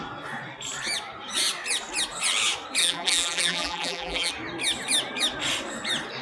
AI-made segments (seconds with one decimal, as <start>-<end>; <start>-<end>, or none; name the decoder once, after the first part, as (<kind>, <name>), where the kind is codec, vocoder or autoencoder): 2.8-4.3 (vocoder, BigVGAN v2)